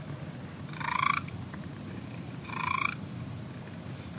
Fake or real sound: fake